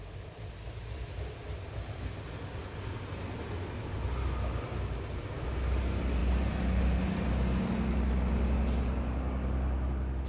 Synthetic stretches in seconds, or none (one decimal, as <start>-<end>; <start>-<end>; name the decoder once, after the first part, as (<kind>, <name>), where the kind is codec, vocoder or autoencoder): none